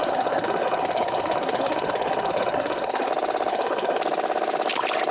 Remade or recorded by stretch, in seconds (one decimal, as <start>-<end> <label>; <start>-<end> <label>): 0.0-3.1 remade; 3.1-3.5 recorded; 3.5-4.0 remade; 4.0-5.1 recorded